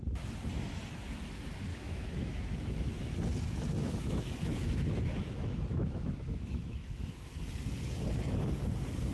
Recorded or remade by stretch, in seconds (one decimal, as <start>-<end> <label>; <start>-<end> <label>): 0.0-1.7 recorded; 1.7-3.0 remade; 3.0-3.8 recorded; 3.8-7.4 remade; 7.4-9.1 recorded